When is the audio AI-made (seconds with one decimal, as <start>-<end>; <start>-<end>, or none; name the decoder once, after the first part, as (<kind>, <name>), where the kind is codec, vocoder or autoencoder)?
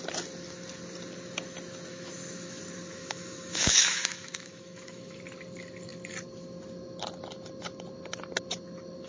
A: 1.9-2.6 (autoencoder, DAC-VAE); 3.0-5.2